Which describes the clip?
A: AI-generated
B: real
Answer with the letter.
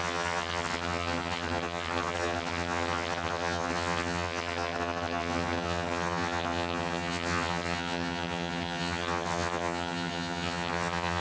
A